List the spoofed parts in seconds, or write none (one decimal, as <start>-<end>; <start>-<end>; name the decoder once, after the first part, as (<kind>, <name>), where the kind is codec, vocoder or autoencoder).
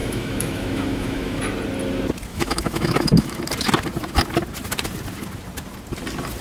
0.0-1.4 (autoencoder, DAC-VAE); 2.3-3.4